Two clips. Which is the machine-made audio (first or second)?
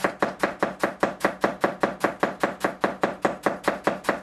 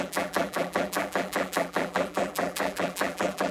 second